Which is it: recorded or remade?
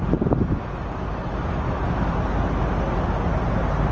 recorded